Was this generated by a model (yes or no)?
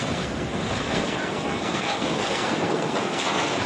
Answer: yes